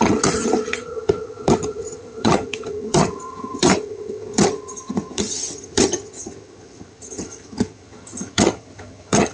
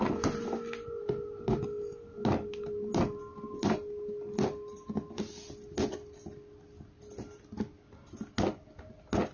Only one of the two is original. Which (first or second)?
second